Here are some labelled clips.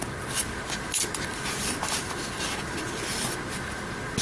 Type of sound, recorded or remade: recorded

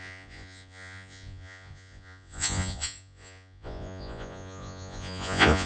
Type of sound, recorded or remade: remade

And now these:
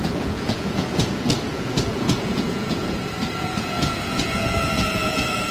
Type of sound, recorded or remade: remade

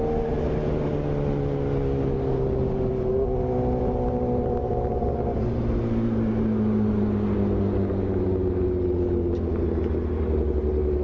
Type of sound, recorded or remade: recorded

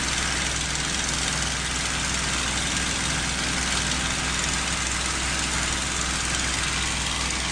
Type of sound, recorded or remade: recorded